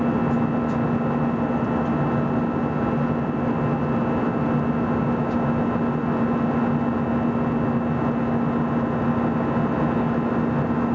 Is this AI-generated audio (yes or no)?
no